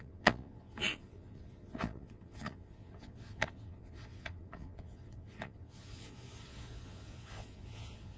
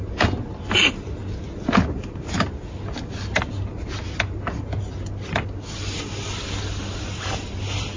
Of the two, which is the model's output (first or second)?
first